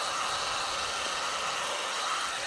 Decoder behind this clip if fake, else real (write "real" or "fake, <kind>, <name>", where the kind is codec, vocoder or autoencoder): real